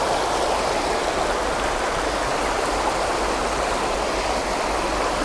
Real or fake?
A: real